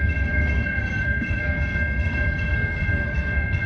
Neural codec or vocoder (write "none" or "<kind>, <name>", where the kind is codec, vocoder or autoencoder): codec, SNAC